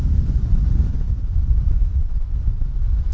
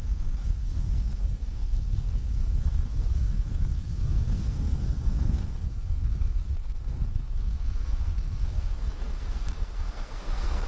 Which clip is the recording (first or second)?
first